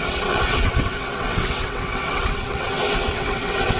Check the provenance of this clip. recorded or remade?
remade